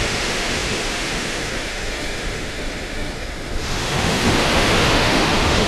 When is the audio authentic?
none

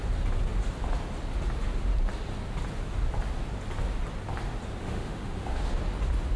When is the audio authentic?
0.0-4.8; 5.8-6.4

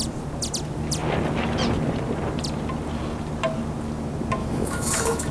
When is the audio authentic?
0.0-4.4

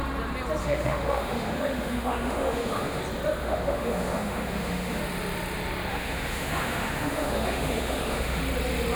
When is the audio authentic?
0.0-0.6; 3.0-3.4; 5.0-5.9; 8.4-9.0

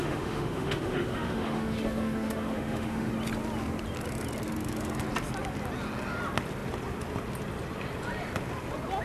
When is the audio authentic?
3.1-9.0

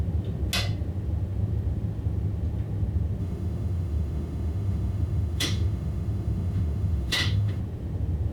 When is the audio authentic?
0.0-3.2; 7.6-8.3